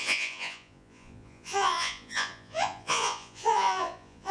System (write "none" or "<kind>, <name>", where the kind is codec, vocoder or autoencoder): vocoder, Vocos